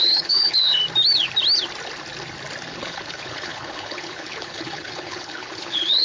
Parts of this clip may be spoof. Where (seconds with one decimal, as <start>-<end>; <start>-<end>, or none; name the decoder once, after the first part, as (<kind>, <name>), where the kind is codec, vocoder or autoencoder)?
0.0-0.8 (codec, HILCodec); 2.7-6.0